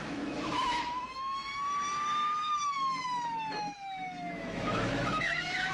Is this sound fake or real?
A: fake